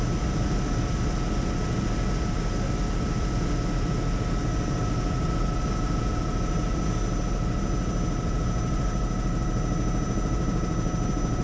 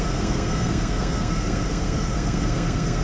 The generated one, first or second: second